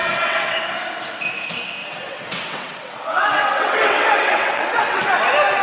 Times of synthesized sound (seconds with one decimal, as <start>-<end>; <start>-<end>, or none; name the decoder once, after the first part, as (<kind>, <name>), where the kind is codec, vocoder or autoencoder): 0.0-0.6 (vocoder, WaveNeXt); 1.8-5.0